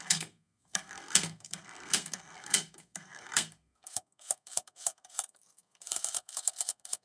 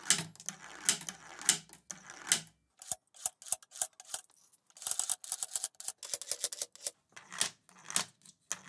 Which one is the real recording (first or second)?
second